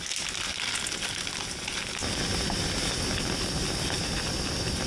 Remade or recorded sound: recorded